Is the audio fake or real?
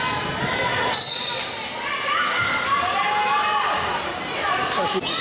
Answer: real